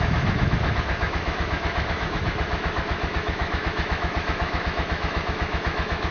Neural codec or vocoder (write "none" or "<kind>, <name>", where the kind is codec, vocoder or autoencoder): autoencoder, DAC-VAE